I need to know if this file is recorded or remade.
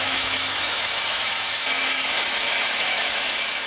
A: remade